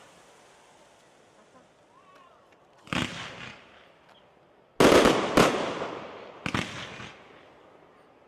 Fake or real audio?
real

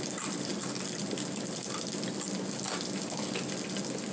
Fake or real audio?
real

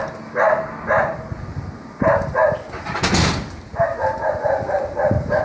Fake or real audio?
real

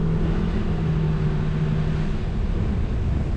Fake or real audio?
real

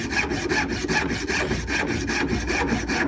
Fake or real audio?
real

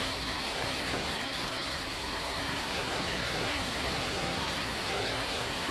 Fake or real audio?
fake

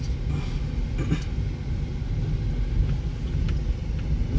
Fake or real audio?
real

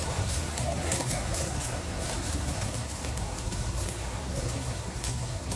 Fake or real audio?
fake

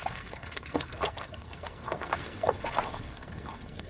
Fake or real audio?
fake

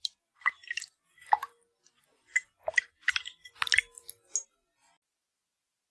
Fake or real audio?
real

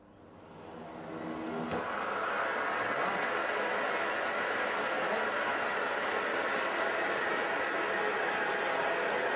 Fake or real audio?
real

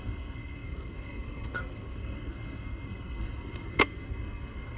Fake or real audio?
fake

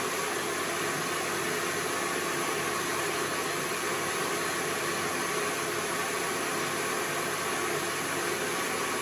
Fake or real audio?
real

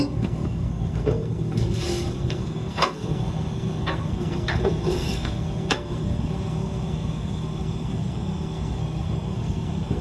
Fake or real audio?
fake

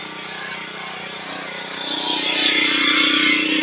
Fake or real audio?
real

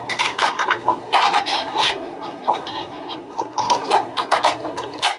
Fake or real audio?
fake